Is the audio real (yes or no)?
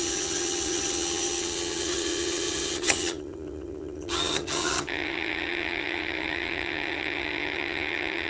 no